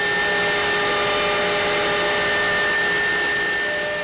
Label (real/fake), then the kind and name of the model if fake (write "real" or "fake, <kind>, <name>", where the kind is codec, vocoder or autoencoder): real